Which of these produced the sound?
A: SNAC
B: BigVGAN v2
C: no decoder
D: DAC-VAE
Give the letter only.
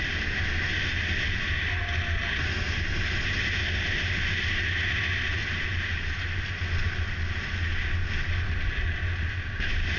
C